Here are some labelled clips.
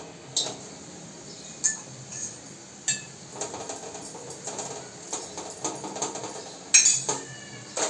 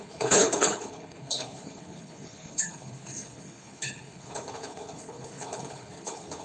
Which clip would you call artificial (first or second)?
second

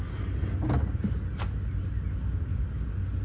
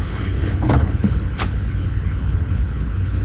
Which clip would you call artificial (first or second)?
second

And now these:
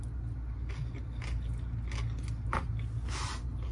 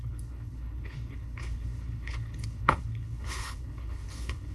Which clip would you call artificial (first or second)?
second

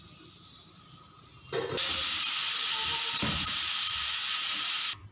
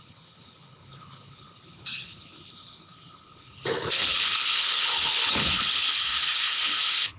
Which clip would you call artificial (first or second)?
second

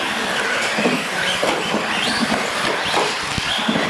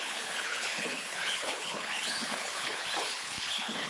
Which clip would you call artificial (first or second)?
second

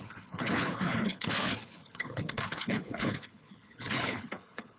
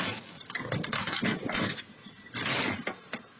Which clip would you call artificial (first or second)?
first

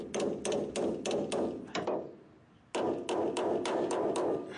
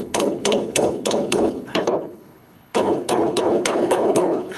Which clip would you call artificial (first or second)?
second